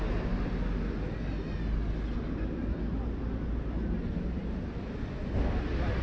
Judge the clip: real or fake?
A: real